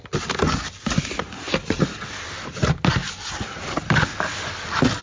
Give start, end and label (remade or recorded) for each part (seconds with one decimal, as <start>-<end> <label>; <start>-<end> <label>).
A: 0.0-3.0 recorded; 3.0-3.8 remade; 3.8-5.0 recorded

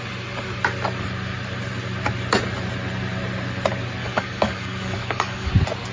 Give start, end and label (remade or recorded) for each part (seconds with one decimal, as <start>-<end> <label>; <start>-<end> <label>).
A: 0.0-4.0 recorded; 4.0-5.5 remade; 5.5-5.9 recorded

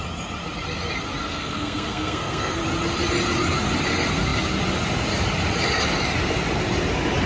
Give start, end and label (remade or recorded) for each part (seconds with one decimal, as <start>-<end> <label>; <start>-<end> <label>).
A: 0.0-1.2 recorded; 1.2-2.6 remade; 2.6-7.3 recorded

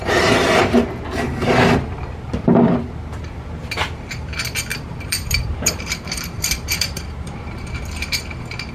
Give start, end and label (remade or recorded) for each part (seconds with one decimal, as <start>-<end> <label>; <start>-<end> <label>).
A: 0.0-1.4 recorded; 1.4-2.0 remade; 2.0-4.7 recorded; 4.7-8.7 remade